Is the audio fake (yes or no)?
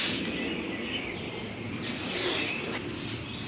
no